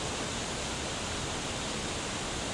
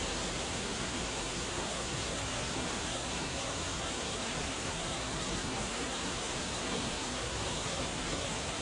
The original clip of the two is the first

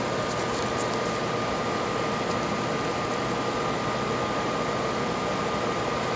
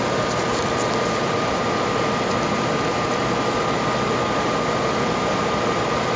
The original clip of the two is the first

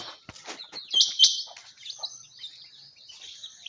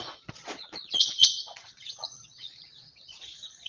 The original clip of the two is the first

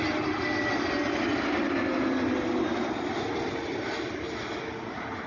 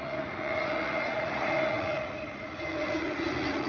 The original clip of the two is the first